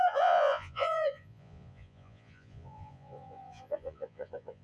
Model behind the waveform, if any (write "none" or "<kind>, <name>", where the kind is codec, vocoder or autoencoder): vocoder, Vocos